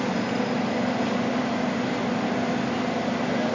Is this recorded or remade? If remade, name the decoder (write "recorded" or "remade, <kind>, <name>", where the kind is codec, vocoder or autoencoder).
recorded